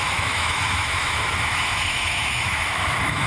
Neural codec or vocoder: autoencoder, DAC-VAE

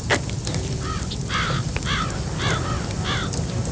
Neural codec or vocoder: none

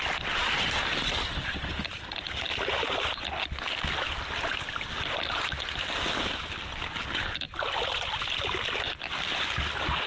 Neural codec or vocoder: none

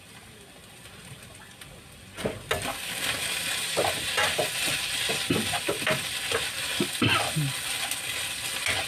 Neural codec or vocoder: none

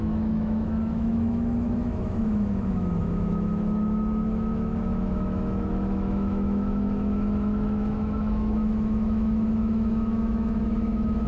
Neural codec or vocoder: autoencoder, DAC-VAE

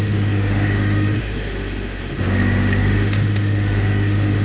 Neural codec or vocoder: autoencoder, DAC-VAE